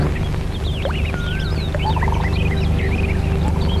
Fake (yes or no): no